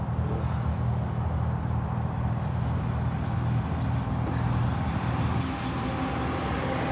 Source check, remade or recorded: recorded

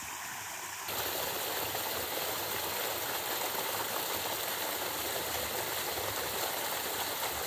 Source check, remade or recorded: recorded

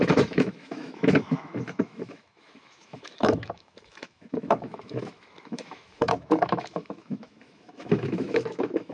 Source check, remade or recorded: remade